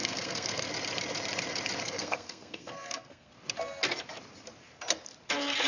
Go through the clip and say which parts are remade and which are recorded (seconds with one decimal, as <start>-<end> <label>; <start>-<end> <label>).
0.0-0.7 remade; 0.7-1.8 recorded; 1.8-3.3 remade; 3.3-5.7 recorded